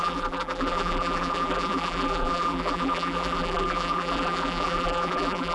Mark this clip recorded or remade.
remade